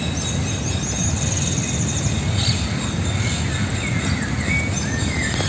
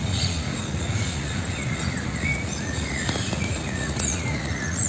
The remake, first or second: second